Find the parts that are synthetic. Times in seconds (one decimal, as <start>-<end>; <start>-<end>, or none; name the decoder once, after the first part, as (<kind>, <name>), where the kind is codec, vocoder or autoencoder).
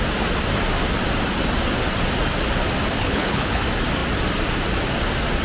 3.0-3.6 (codec, HILCodec)